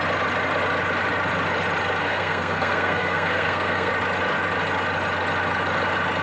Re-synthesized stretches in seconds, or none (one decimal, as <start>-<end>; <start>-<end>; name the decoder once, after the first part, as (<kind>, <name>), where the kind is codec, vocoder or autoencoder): 2.0-3.9 (codec, SNAC)